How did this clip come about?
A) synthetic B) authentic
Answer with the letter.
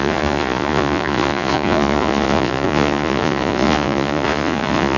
A